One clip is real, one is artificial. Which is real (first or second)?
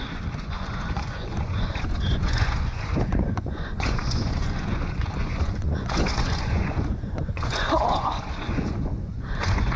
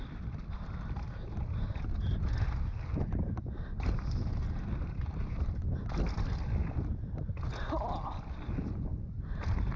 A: second